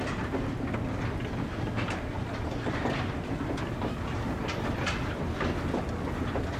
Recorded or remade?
recorded